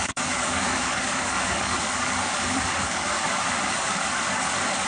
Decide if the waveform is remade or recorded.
remade